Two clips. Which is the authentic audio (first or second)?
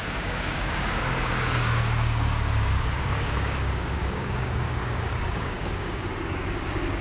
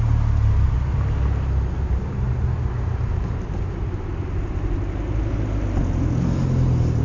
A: second